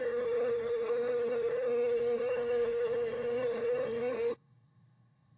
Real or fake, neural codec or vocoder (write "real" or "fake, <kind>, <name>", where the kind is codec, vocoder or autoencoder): fake, codec, SNAC